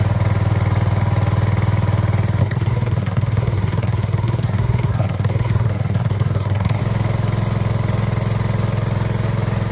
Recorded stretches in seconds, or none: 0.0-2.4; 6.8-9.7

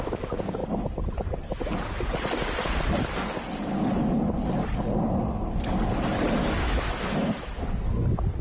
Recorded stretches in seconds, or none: 0.0-6.4; 7.5-8.4

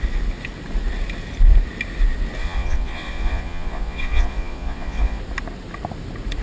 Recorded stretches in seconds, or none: 0.0-2.4; 5.2-6.4

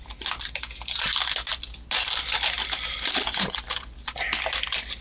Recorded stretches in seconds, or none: 0.0-5.0

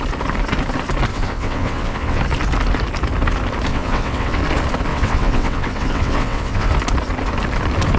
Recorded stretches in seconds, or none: 0.0-1.1; 2.2-3.7; 4.4-4.9; 6.7-8.0

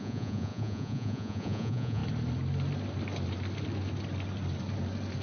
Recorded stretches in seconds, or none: 2.0-5.2

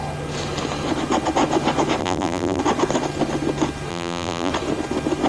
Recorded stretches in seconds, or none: 0.0-2.0; 2.6-3.9; 4.5-5.3

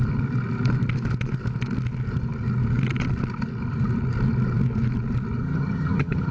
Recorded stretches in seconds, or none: 0.0-5.4